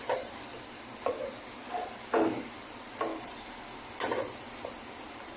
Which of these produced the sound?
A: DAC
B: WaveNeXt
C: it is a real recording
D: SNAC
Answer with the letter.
C